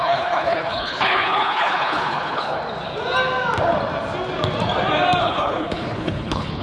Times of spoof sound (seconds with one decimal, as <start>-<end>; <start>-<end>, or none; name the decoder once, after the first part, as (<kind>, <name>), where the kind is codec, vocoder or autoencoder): 0.0-2.6 (codec, HILCodec); 5.2-6.6